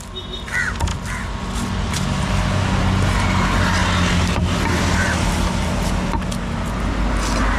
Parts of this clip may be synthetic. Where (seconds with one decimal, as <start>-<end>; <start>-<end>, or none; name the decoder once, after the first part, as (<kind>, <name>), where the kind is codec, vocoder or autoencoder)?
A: none